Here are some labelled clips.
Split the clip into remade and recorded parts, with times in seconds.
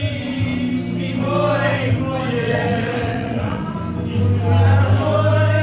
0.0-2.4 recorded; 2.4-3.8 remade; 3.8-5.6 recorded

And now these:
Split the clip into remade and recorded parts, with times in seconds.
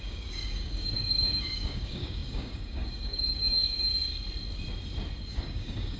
0.0-3.9 remade; 3.9-5.3 recorded; 5.3-6.0 remade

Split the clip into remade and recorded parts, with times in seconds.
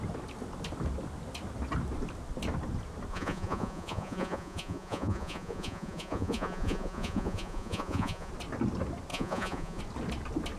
0.0-3.1 recorded; 3.1-8.3 remade; 8.3-9.1 recorded; 9.1-9.8 remade; 9.8-10.6 recorded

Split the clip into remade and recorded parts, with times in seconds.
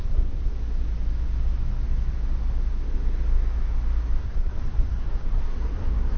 0.0-0.5 remade; 0.5-4.2 recorded; 4.2-6.2 remade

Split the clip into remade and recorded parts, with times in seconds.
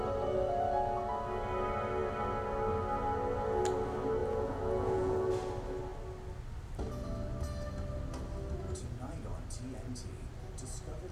0.0-4.2 recorded; 4.2-5.3 remade; 5.3-11.1 recorded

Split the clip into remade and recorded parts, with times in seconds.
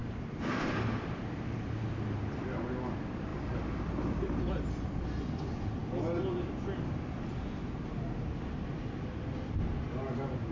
0.0-10.5 recorded